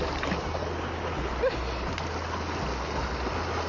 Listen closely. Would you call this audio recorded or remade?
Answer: recorded